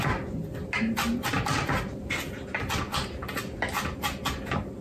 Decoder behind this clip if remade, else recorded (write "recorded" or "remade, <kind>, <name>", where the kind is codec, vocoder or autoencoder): recorded